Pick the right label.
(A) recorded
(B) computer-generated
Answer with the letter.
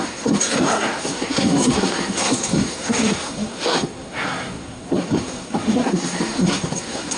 B